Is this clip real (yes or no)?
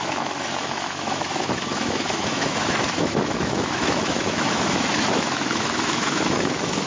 no